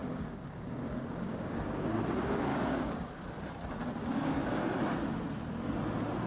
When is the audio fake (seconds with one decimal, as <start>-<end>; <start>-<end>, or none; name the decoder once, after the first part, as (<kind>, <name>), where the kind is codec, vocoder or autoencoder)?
0.0-2.0 (codec, DAC); 2.5-3.1; 4.0-4.6